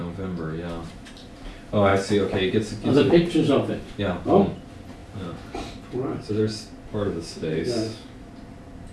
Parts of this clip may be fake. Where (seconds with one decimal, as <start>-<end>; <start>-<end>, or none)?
6.9-8.3